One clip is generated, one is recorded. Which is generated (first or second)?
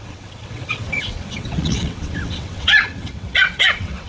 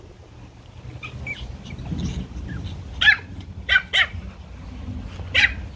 first